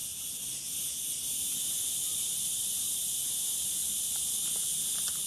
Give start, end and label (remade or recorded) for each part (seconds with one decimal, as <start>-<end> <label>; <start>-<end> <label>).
0.0-0.6 remade; 0.6-2.1 recorded; 2.1-3.2 remade; 3.2-5.3 recorded